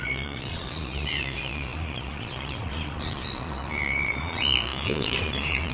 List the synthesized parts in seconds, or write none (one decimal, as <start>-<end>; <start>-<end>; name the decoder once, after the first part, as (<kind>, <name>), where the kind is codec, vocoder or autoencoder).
0.0-5.7 (vocoder, Vocos)